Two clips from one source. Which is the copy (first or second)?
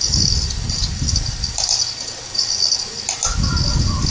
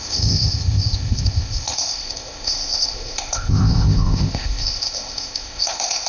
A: second